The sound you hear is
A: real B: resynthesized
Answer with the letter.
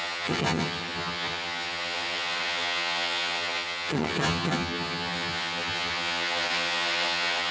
B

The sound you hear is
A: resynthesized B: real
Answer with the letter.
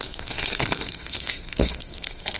A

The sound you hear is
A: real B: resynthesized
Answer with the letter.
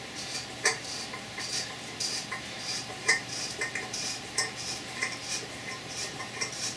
B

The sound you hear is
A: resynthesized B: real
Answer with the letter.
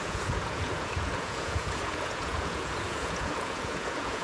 A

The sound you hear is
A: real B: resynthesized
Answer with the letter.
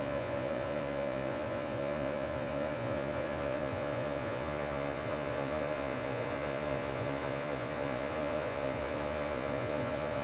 B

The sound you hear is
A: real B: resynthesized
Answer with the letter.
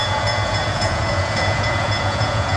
B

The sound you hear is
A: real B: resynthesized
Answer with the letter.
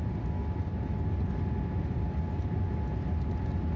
A